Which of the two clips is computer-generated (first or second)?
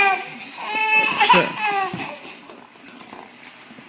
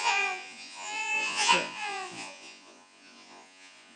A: second